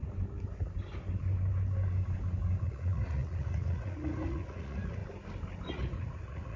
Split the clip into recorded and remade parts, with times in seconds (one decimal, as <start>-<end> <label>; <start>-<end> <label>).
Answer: 0.0-2.6 recorded; 2.6-5.0 remade; 5.0-5.7 recorded; 5.7-6.6 remade